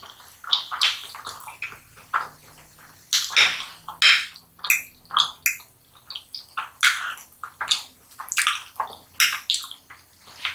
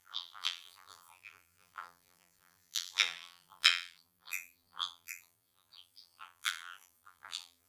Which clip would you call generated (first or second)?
second